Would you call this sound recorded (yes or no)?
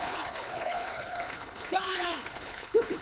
no